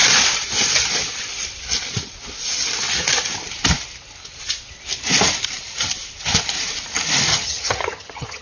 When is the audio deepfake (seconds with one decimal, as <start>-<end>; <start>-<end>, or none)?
7.3-8.4